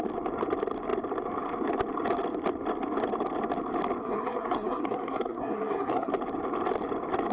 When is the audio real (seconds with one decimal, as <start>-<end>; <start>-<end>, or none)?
0.0-4.0; 6.1-7.3